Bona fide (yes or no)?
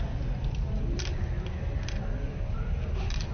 yes